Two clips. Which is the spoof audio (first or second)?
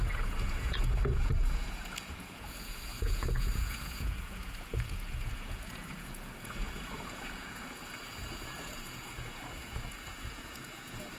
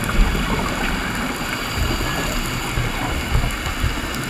first